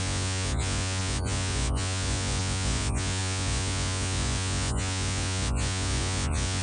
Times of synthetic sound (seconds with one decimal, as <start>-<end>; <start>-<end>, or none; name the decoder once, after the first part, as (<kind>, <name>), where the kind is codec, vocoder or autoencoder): 0.0-6.6 (vocoder, Vocos)